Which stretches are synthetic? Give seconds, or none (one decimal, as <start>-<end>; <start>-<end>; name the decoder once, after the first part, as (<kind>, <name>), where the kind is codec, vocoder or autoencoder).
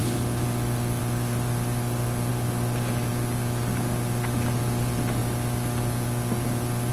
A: 0.0-5.2 (vocoder, BigVGAN v2)